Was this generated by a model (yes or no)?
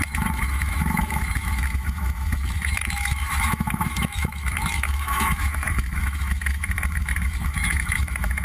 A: yes